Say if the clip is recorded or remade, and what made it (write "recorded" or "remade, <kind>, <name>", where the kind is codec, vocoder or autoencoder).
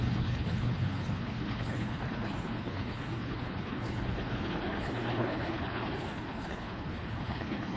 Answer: remade, codec, HILCodec